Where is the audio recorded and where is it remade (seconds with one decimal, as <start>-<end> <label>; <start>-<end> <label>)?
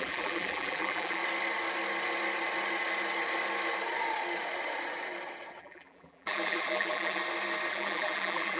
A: 0.0-1.2 remade; 1.2-5.6 recorded; 5.6-7.2 remade; 7.2-7.7 recorded; 7.7-8.6 remade